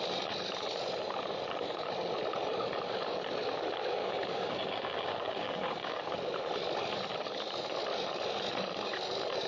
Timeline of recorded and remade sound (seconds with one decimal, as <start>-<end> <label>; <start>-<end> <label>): 0.0-4.0 recorded; 4.0-6.0 remade; 6.0-9.5 recorded